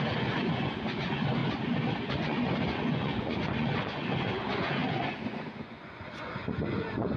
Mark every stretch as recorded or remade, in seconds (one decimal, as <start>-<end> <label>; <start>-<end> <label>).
0.0-1.4 remade; 1.4-2.1 recorded; 2.1-7.2 remade